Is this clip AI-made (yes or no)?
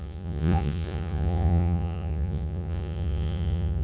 yes